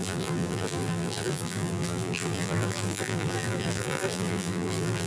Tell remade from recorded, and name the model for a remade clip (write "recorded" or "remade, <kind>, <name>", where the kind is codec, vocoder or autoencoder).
remade, vocoder, BigVGAN v2